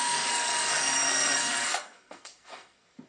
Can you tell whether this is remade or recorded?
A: remade